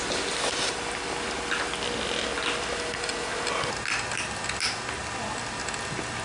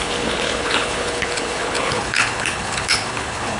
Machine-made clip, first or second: second